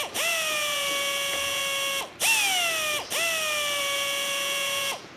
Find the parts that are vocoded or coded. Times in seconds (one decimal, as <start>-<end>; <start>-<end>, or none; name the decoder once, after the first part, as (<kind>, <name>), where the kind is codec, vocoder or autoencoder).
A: 0.0-1.6 (vocoder, Vocos); 3.8-5.2